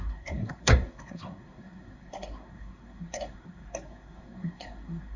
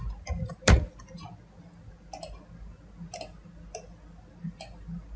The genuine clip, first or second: second